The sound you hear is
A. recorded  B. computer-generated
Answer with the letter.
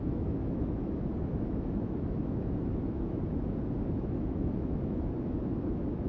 B